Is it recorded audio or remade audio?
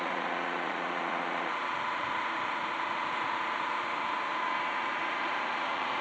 remade